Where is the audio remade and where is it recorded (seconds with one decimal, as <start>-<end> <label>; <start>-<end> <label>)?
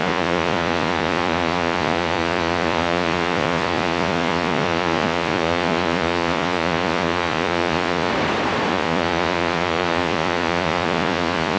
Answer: 0.0-8.1 remade; 8.1-8.7 recorded; 8.7-11.6 remade